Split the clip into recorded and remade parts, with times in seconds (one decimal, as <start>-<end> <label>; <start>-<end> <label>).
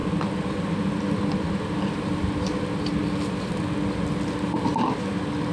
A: 0.0-5.5 recorded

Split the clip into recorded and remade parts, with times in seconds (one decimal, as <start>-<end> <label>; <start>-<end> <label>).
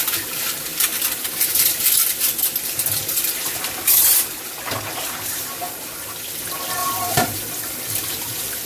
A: 0.0-0.7 recorded; 0.7-4.5 remade; 4.5-6.8 recorded; 6.8-8.7 remade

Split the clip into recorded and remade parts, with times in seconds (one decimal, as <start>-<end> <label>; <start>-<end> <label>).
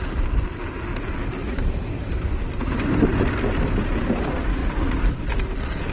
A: 0.0-5.9 recorded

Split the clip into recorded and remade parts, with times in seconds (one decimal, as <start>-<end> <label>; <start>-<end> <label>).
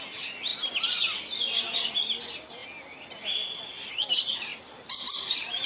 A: 0.0-4.5 recorded; 4.5-5.7 remade